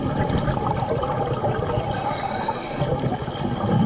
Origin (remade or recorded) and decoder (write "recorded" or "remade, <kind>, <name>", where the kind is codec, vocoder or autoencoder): recorded